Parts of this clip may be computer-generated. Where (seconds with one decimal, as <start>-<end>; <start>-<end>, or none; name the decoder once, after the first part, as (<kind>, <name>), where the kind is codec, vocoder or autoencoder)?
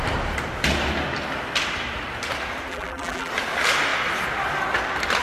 2.7-3.3 (vocoder, BigVGAN v2)